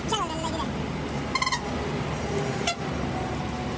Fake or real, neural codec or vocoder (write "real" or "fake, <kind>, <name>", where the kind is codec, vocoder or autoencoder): real